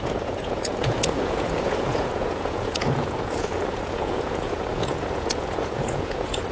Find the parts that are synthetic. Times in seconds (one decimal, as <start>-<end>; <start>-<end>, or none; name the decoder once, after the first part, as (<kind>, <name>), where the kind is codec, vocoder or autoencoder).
0.0-6.5 (vocoder, Vocos)

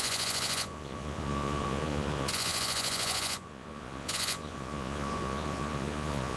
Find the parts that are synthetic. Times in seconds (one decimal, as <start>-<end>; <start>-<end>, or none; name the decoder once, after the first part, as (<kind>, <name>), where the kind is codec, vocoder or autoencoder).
0.0-6.4 (vocoder, Vocos)